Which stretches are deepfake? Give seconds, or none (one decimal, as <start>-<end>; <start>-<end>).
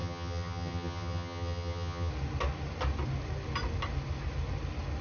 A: 0.0-2.1